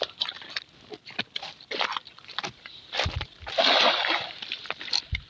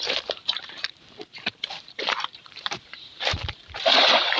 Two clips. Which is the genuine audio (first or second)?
first